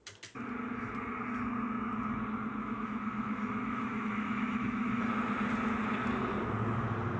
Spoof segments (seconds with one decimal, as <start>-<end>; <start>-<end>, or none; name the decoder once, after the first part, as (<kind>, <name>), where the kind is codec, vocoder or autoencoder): 2.6-5.1 (autoencoder, DAC-VAE)